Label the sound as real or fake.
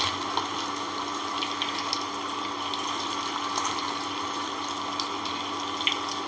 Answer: real